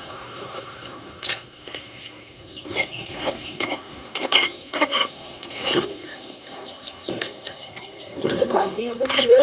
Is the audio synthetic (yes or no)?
yes